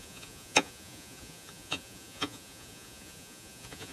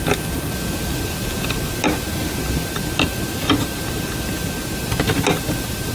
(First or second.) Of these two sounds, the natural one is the second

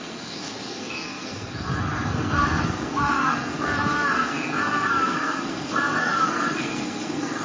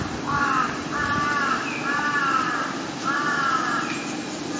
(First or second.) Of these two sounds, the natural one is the second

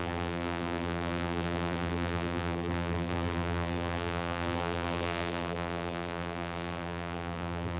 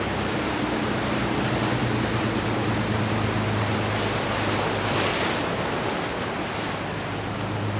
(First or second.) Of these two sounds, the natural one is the second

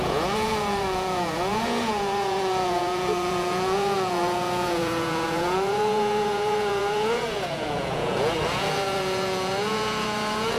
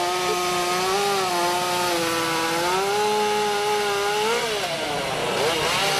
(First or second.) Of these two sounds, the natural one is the second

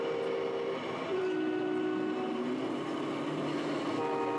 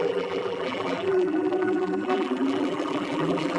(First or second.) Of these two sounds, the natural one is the first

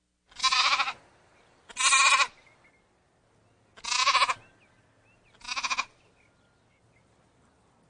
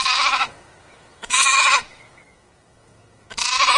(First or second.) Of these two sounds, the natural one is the first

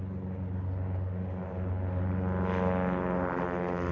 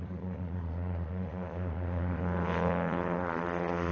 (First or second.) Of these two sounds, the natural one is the first